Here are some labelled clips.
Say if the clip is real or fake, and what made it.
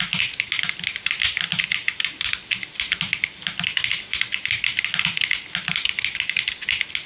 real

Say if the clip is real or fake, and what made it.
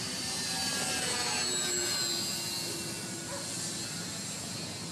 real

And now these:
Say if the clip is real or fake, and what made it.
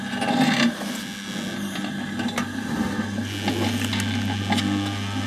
real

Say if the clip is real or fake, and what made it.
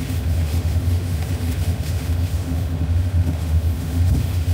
fake, autoencoder, DAC-VAE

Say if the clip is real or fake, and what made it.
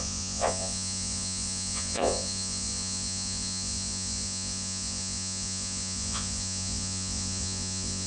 fake, vocoder, Vocos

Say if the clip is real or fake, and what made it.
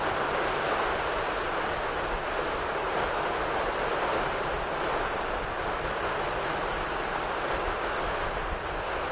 real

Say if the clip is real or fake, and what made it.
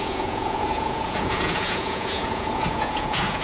fake, vocoder, Vocos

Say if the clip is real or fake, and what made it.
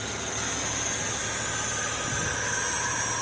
real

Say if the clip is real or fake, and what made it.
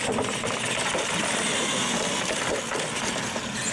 real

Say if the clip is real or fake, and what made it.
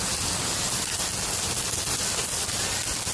real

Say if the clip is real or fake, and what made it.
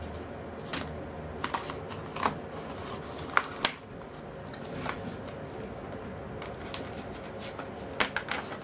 real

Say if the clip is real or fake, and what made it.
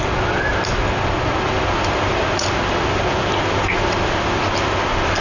real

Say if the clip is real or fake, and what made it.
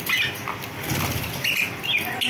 real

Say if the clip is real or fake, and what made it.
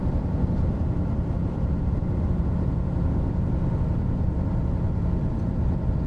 fake, vocoder, BigVGAN v2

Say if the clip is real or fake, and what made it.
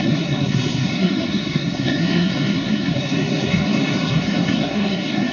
fake, codec, SNAC